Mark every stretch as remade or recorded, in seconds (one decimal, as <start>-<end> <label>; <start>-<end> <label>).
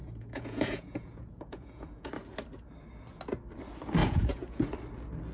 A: 0.0-2.1 remade; 2.1-4.0 recorded; 4.0-4.7 remade; 4.7-5.3 recorded